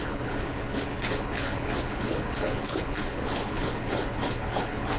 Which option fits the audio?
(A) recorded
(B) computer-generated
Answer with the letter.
B